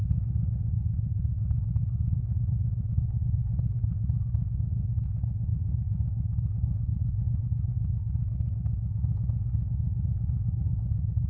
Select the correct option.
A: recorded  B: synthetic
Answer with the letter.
B